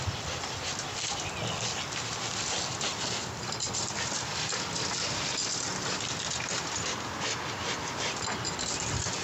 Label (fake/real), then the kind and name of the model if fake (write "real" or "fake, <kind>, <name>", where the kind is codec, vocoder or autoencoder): real